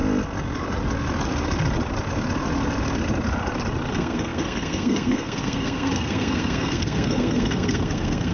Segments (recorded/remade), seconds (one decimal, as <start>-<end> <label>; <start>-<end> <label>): 0.0-3.9 recorded; 3.9-8.3 remade